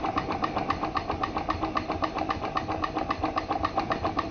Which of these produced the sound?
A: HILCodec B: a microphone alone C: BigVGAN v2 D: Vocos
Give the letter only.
B